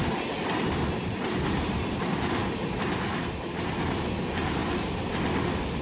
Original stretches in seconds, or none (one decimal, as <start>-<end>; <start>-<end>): 0.0-5.8